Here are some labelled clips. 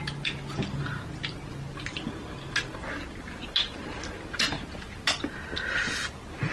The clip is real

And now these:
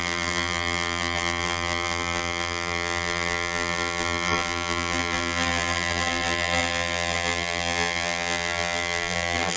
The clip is fake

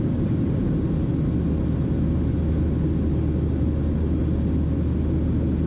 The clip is real